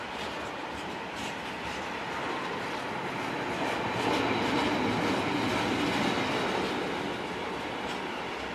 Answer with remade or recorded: recorded